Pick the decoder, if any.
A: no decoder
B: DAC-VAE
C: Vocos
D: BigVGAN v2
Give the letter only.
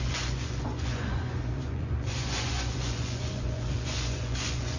C